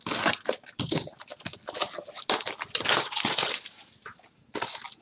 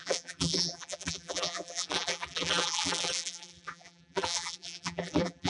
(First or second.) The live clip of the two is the first